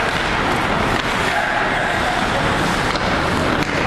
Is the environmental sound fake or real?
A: real